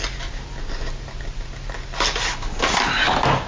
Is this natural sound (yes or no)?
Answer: yes